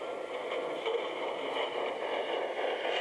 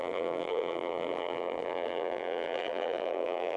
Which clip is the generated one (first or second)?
second